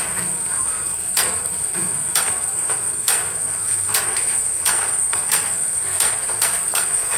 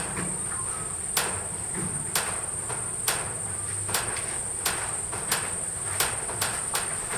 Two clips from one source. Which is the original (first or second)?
second